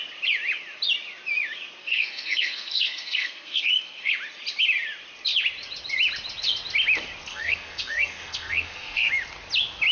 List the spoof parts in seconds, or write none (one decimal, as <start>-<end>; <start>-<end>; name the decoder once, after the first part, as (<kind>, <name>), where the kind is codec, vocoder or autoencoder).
1.8-4.1 (codec, SNAC); 7.3-9.1